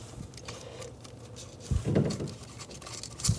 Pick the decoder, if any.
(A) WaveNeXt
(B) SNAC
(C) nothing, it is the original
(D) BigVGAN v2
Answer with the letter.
C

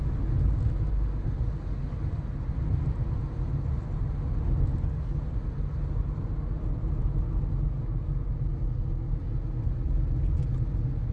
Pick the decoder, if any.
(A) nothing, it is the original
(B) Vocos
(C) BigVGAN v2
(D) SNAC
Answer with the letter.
A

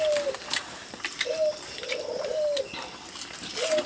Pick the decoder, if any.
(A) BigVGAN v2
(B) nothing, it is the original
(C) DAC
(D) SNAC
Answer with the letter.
B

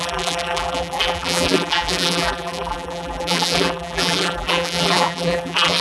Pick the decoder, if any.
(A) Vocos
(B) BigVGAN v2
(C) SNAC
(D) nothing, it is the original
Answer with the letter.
B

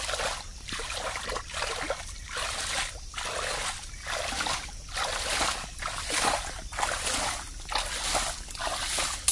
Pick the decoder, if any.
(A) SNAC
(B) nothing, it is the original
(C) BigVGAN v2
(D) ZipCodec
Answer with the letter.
B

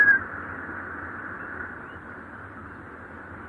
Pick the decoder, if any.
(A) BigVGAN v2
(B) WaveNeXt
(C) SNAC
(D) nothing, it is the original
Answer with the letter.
D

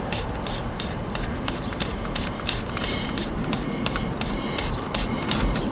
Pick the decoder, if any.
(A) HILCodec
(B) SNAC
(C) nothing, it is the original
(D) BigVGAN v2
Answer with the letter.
D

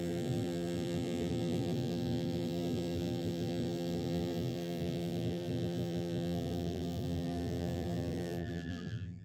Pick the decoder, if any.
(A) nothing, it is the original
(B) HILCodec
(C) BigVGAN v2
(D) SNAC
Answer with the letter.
C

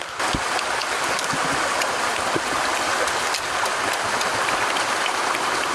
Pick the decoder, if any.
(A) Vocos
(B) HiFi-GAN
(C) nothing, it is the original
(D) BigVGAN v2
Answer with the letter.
C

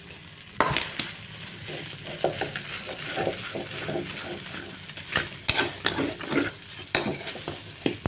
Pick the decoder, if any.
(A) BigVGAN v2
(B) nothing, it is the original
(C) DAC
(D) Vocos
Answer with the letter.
B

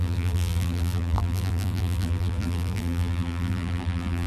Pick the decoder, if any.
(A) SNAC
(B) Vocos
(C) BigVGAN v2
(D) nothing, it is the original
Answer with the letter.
C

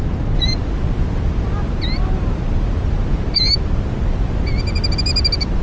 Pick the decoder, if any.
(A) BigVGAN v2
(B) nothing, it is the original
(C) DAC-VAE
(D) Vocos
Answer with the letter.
B